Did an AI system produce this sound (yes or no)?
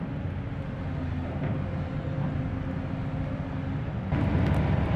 no